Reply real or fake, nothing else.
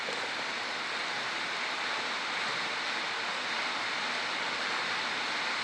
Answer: real